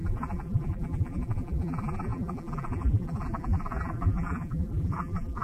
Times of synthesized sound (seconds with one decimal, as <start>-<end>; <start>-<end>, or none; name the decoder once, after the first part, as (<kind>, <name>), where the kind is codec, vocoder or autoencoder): 0.0-5.4 (vocoder, BigVGAN v2)